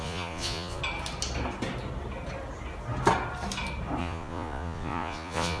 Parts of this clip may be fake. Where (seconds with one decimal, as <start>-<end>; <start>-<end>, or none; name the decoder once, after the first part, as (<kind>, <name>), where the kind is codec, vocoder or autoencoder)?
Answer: 0.0-0.8 (vocoder, Vocos); 4.0-5.6